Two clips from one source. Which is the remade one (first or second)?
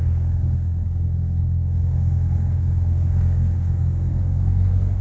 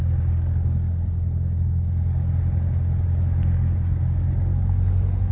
first